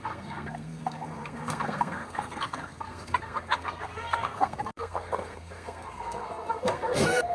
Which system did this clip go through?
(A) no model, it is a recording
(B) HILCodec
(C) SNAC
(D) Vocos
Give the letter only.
C